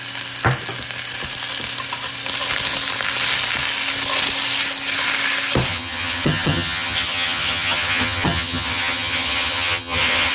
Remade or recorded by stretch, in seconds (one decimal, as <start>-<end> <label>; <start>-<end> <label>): 0.0-5.7 recorded; 5.7-10.3 remade